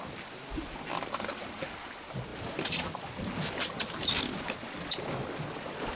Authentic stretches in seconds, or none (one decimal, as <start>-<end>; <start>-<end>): 0.0-6.0